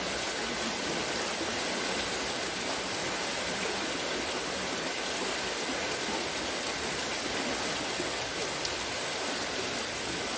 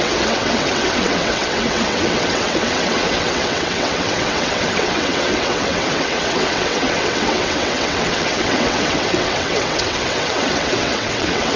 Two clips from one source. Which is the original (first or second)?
first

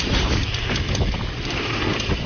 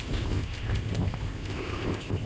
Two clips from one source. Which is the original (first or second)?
first